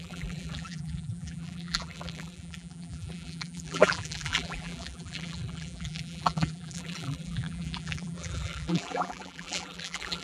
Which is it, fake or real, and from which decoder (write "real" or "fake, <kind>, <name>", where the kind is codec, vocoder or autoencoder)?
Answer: fake, vocoder, BigVGAN v2